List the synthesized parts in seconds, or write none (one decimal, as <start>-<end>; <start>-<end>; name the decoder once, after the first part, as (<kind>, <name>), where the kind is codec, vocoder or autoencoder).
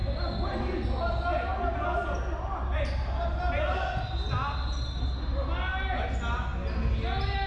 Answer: none